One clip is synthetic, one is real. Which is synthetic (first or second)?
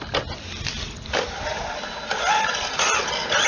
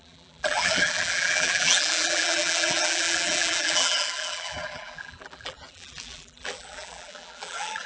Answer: second